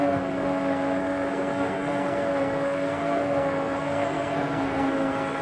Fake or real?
fake